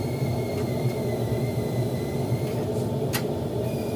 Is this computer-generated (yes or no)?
yes